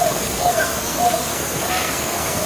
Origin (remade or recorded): remade